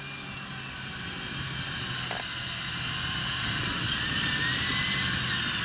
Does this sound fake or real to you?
real